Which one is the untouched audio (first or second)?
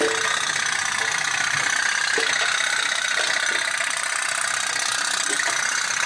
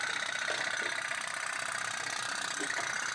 first